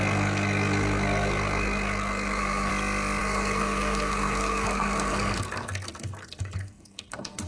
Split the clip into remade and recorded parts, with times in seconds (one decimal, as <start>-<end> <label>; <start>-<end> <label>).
0.0-2.7 remade; 2.7-3.2 recorded; 3.2-7.5 remade